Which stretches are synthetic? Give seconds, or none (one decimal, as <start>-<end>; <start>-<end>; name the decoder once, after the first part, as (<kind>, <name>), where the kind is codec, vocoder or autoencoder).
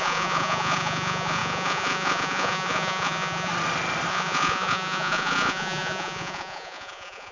0.0-3.5 (vocoder, Vocos); 4.1-7.3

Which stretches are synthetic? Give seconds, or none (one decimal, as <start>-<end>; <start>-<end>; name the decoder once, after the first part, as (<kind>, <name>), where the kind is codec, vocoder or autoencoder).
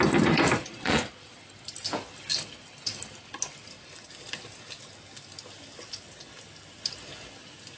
0.6-1.4 (vocoder, Vocos)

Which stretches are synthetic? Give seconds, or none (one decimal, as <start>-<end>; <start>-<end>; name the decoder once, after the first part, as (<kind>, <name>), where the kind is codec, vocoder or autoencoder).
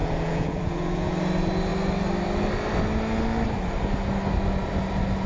0.0-1.1 (vocoder, Vocos)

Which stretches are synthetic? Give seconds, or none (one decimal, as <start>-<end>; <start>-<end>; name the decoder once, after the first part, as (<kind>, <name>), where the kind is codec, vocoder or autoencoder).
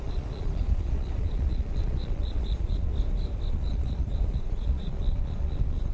0.0-2.9 (vocoder, Vocos); 3.5-5.9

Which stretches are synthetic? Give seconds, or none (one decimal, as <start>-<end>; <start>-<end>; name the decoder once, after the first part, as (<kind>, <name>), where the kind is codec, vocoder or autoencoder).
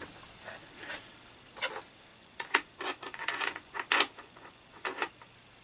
2.1-5.1 (vocoder, Vocos)